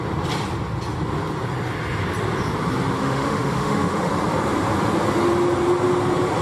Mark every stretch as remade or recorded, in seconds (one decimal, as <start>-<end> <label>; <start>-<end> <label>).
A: 0.0-3.0 recorded; 3.0-4.1 remade; 4.1-6.4 recorded